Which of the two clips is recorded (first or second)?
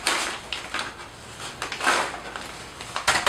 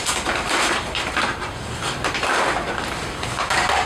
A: first